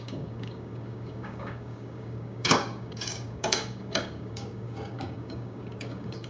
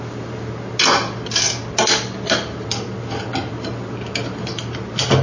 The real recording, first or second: second